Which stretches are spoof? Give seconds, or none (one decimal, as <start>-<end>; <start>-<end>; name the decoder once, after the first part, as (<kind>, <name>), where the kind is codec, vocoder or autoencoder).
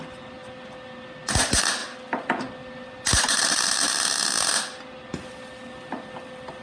none